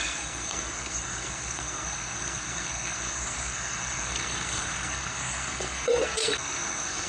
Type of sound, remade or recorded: remade